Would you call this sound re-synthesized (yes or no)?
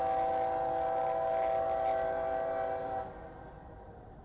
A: no